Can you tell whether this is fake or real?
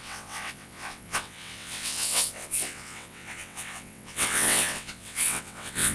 fake